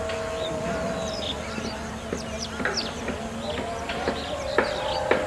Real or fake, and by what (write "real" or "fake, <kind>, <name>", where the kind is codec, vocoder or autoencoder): real